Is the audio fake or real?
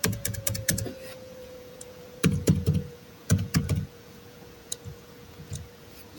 fake